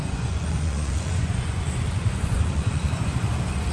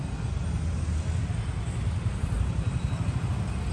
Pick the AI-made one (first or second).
first